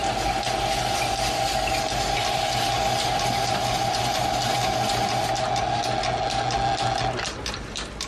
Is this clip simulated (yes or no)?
no